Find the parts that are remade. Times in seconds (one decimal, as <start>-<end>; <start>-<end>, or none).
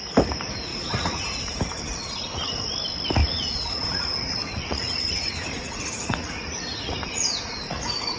0.7-1.6; 3.2-8.2